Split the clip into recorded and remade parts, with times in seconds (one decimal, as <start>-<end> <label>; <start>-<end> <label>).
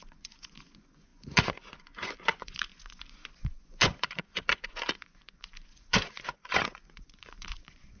0.0-8.0 remade